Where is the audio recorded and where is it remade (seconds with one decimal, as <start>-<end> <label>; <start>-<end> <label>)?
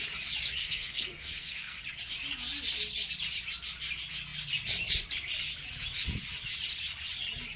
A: 0.0-0.6 recorded; 0.6-1.8 remade; 1.8-7.6 recorded